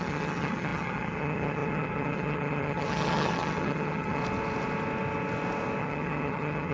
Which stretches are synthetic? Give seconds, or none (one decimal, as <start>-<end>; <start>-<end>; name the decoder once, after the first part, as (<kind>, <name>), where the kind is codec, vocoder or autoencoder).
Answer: 0.0-4.2 (vocoder, HiFi-GAN); 5.8-6.7